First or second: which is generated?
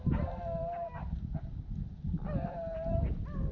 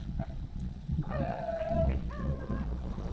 second